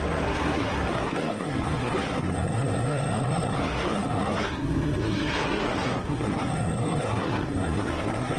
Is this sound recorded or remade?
remade